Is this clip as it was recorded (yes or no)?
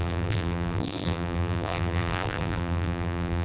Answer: no